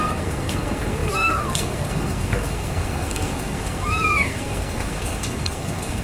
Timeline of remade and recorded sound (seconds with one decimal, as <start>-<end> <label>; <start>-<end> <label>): 0.0-6.0 remade